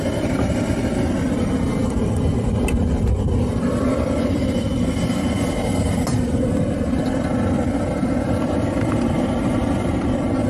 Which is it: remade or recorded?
recorded